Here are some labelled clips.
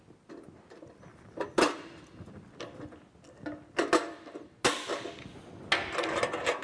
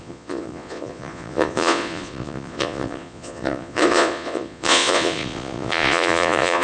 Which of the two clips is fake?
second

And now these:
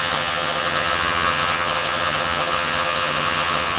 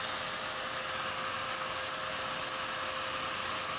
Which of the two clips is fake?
first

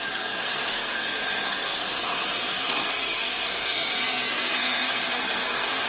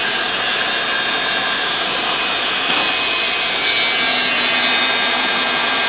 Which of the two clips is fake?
first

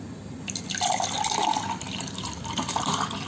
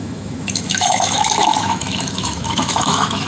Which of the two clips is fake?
second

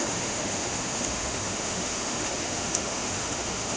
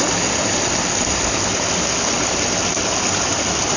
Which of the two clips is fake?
first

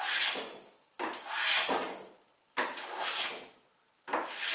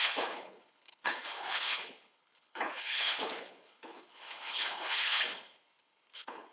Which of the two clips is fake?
second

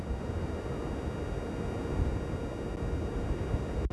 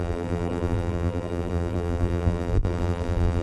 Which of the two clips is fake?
second